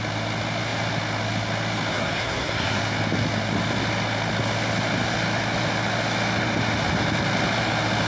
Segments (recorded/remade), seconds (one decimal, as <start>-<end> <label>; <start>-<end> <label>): 0.0-1.9 recorded; 1.9-2.8 remade; 2.8-8.1 recorded